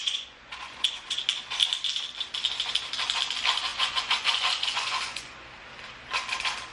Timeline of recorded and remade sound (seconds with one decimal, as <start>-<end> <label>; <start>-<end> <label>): 0.0-1.2 remade; 1.2-3.7 recorded; 3.7-5.5 remade; 5.5-6.7 recorded